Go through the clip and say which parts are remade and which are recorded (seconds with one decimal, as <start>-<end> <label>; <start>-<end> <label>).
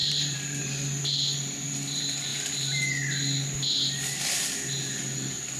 0.0-0.6 remade; 0.6-5.6 recorded